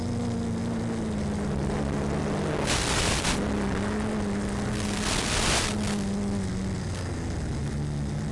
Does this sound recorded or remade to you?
recorded